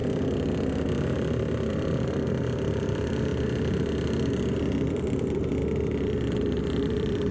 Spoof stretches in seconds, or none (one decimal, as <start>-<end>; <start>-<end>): 1.7-3.3; 4.9-5.6; 6.6-7.3